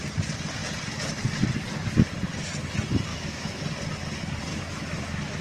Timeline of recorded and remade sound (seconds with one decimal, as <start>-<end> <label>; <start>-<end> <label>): 0.0-3.1 recorded; 3.1-3.6 remade; 3.6-4.5 recorded; 4.5-5.4 remade